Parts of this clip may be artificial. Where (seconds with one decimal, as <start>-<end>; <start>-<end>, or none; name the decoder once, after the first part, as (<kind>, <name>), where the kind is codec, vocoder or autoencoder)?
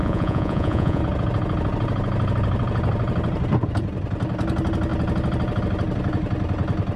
0.0-1.0 (vocoder, Vocos)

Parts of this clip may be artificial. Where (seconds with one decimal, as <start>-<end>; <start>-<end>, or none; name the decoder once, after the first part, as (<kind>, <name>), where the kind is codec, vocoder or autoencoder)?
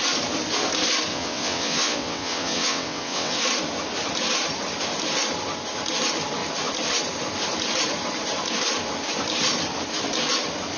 1.1-3.4 (vocoder, WaveNeXt)